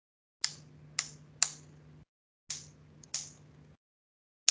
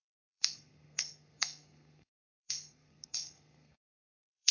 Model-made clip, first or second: second